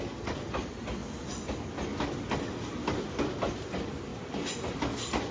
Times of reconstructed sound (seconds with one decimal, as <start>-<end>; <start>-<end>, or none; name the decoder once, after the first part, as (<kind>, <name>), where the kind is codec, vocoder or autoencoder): none